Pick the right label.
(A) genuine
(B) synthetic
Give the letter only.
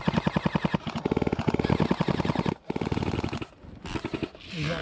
A